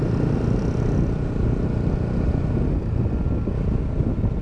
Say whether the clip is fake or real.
real